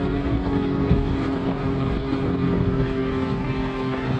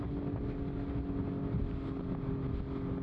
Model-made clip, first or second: first